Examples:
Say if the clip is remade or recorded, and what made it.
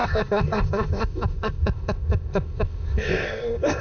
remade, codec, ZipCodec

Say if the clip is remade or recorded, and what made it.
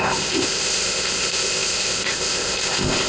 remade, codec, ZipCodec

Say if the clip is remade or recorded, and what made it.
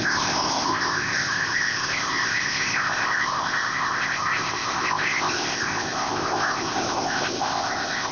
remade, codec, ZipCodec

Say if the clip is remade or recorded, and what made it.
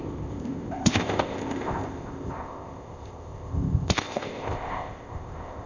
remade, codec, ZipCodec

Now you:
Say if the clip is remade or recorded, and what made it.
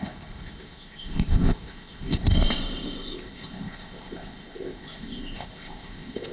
remade, codec, ZipCodec